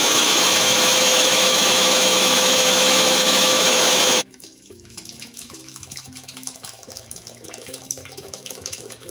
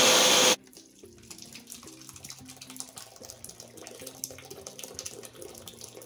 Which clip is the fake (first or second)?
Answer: first